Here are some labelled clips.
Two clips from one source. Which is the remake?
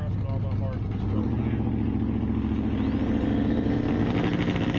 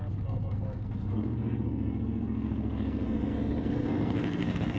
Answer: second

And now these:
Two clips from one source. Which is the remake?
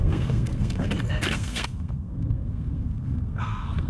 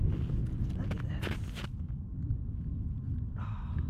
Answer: first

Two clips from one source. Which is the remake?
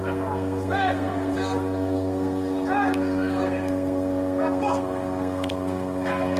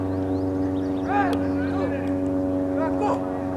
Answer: first